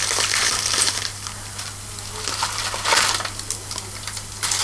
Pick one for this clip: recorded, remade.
recorded